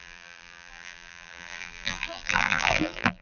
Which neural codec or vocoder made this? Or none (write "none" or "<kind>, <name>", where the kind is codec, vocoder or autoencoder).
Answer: vocoder, BigVGAN v2